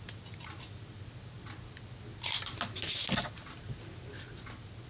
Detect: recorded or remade recorded